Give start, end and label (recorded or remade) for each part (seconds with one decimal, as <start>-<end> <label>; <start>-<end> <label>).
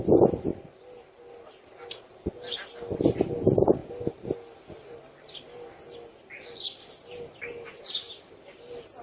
0.0-9.0 recorded